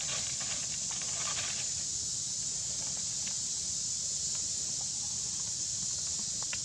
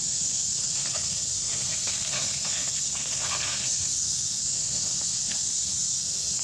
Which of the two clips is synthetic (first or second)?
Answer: second